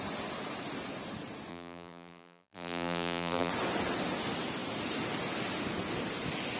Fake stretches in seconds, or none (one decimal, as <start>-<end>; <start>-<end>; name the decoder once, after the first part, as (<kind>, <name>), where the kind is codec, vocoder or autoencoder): 1.5-3.5 (vocoder, BigVGAN v2)